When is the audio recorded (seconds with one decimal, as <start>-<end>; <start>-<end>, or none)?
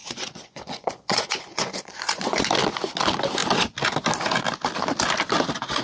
2.4-5.8